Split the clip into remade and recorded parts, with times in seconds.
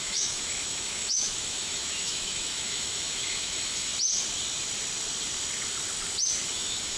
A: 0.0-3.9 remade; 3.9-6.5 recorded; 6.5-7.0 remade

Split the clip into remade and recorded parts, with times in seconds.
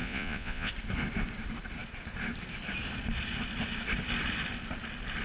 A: 0.0-0.7 remade; 0.7-5.2 recorded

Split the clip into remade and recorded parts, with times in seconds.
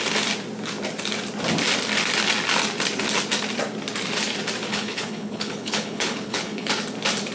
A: 0.0-4.7 recorded; 4.7-6.7 remade; 6.7-7.3 recorded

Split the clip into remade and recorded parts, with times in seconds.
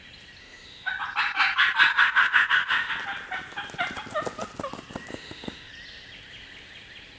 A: 0.0-0.4 recorded; 0.4-0.9 remade; 0.9-1.9 recorded; 1.9-2.9 remade; 2.9-5.1 recorded; 5.1-5.7 remade; 5.7-7.2 recorded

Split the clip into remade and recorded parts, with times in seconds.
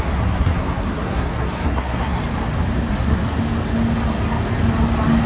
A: 0.0-2.2 remade; 2.2-2.9 recorded; 2.9-3.4 remade; 3.4-5.3 recorded